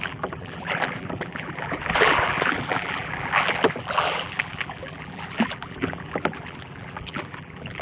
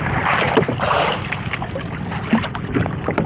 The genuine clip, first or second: second